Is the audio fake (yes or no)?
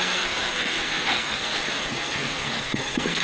yes